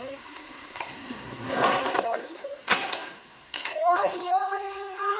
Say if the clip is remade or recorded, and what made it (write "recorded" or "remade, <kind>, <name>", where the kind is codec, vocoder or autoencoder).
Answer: remade, codec, SNAC